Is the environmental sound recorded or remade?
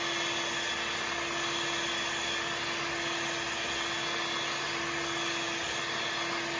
recorded